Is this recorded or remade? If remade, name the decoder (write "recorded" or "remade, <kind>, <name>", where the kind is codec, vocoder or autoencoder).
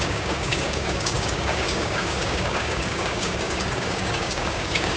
remade, codec, DAC